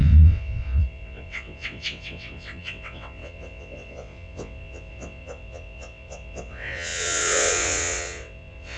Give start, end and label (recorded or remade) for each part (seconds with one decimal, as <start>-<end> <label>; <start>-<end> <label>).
0.0-8.8 remade